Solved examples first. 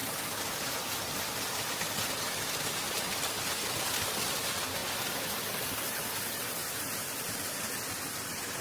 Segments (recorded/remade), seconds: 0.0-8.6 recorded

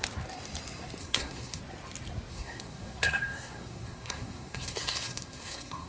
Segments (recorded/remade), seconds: 0.0-1.0 recorded; 1.0-1.6 remade; 1.6-2.3 recorded; 2.3-5.9 remade

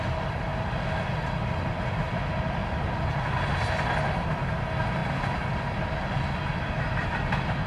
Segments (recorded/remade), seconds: 0.0-7.7 recorded

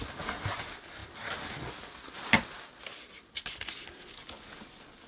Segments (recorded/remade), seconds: 0.0-5.1 recorded

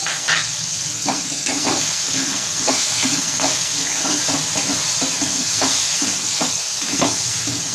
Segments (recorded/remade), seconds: 0.0-4.2 remade; 4.2-5.2 recorded; 5.2-7.7 remade